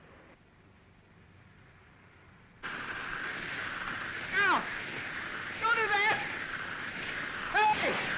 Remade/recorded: recorded